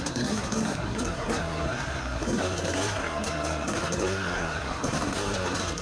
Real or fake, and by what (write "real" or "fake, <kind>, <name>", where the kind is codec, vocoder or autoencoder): fake, codec, SNAC